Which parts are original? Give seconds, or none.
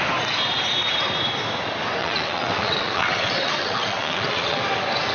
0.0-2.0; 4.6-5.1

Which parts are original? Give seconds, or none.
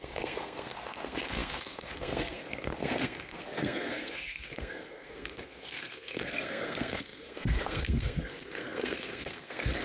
none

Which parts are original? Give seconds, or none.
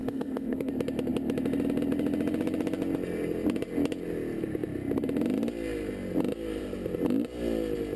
0.7-8.0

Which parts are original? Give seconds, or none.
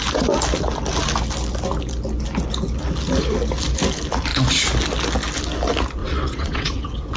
0.0-6.0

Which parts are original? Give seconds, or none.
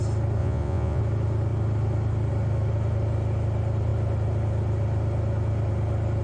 0.0-0.4; 1.0-6.2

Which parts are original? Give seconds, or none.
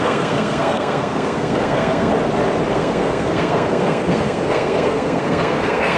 2.1-2.7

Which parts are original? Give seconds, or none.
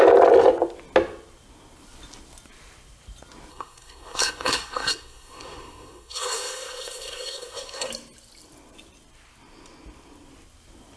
0.0-3.5; 7.9-11.0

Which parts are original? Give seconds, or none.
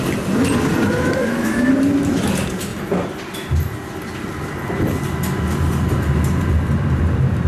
0.0-1.2; 1.7-7.5